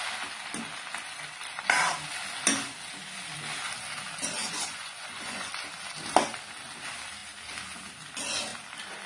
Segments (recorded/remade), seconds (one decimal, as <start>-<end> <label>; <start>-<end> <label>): 0.0-4.4 recorded; 4.4-5.5 remade; 5.5-9.1 recorded